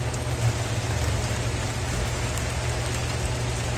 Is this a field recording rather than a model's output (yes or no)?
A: yes